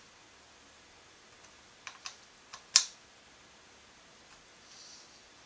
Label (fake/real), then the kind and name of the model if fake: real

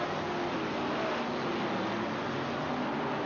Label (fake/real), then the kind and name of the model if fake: real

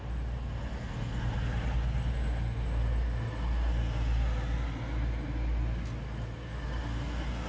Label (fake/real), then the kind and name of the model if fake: real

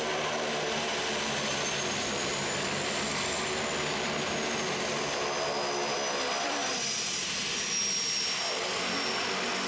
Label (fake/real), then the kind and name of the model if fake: real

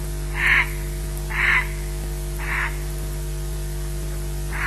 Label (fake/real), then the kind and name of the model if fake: real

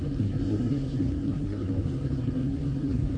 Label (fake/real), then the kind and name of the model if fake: fake, codec, SNAC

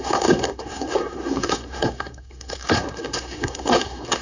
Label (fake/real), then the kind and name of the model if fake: fake, codec, SNAC